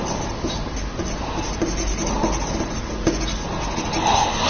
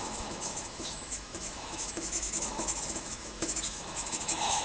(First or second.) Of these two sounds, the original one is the first